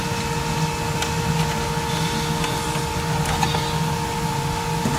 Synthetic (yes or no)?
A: no